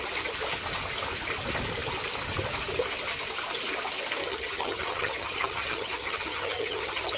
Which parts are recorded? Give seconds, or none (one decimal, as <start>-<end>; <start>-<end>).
0.0-4.2